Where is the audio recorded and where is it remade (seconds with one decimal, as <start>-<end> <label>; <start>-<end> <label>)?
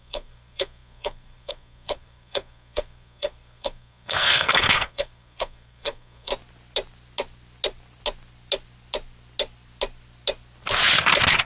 0.0-6.3 remade; 6.3-11.5 recorded